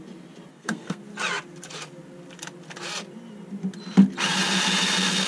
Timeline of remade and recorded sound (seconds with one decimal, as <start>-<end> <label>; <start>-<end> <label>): 0.0-0.5 recorded; 0.5-1.0 remade; 1.0-5.3 recorded